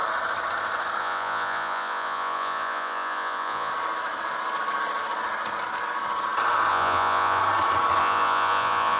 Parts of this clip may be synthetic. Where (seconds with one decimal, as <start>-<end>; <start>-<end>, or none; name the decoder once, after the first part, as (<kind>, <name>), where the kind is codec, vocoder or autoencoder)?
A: 1.0-3.7 (vocoder, Vocos); 6.7-7.4; 8.0-9.0